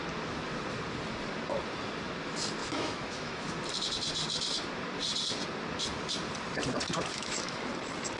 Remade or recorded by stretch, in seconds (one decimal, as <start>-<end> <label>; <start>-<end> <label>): 0.0-2.6 recorded; 2.6-3.5 remade; 3.5-7.1 recorded; 7.1-7.6 remade; 7.6-8.2 recorded